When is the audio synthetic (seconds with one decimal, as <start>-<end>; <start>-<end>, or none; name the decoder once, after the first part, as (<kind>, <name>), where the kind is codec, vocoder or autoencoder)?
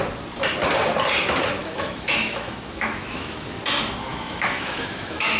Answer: 1.6-3.6 (autoencoder, DAC-VAE); 4.1-5.4